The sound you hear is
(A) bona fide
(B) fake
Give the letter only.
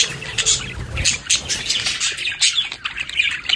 A